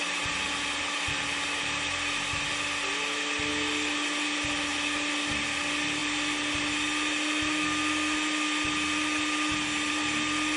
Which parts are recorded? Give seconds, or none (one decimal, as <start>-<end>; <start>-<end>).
0.0-10.6